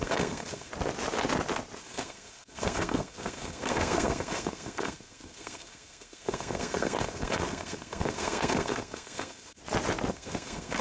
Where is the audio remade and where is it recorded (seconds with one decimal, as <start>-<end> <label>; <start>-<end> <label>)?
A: 0.0-0.7 remade; 0.7-1.8 recorded; 1.8-9.6 remade; 9.6-10.1 recorded; 10.1-10.8 remade